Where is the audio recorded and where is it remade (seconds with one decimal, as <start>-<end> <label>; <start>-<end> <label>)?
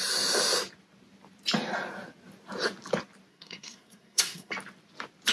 0.0-3.3 recorded; 3.3-4.5 remade; 4.5-5.3 recorded